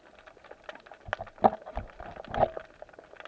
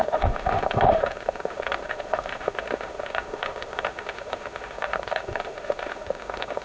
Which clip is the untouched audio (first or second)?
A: first